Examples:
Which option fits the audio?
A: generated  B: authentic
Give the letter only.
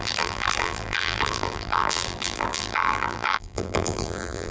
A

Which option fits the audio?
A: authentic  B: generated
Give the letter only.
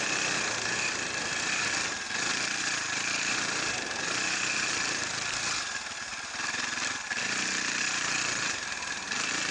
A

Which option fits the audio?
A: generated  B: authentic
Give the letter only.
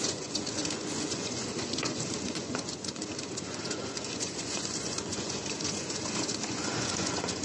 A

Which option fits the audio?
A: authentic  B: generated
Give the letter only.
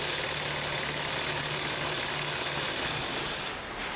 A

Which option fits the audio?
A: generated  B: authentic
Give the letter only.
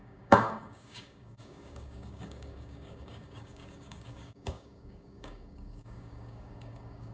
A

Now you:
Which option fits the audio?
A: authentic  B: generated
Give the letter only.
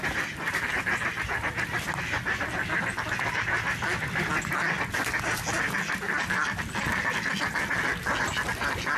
A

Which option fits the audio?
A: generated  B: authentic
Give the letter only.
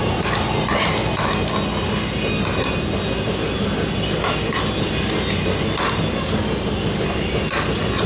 B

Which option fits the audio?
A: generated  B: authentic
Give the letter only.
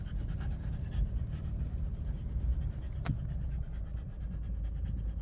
B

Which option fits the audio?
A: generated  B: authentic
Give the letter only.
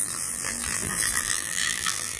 A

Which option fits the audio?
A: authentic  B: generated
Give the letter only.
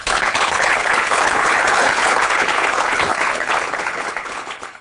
B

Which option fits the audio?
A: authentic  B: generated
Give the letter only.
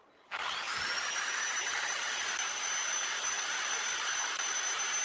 A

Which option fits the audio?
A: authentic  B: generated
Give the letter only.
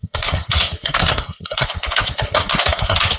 B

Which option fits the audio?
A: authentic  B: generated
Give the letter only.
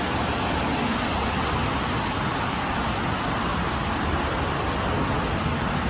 A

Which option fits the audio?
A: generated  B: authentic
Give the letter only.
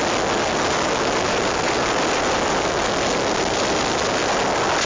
B